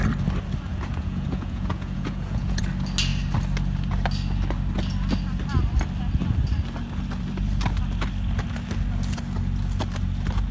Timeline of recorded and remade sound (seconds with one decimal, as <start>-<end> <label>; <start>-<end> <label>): 0.0-0.7 recorded; 0.7-2.6 remade; 2.6-10.5 recorded

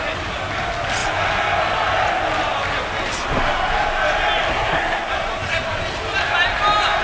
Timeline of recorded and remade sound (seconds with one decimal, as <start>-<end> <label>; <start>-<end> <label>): 0.0-4.5 recorded; 4.5-5.1 remade; 5.1-7.0 recorded

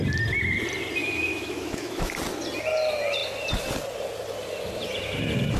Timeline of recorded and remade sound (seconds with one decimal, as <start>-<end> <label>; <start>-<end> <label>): 0.0-1.0 recorded; 1.0-2.1 remade; 2.1-5.6 recorded

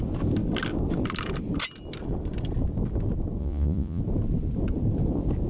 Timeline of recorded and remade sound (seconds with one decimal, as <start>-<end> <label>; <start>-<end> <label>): 0.0-3.4 recorded; 3.4-4.0 remade; 4.0-5.5 recorded

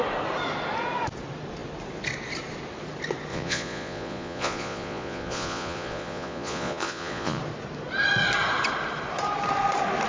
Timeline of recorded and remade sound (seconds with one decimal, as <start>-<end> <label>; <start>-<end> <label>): 0.0-3.3 recorded; 3.3-7.4 remade; 7.4-10.1 recorded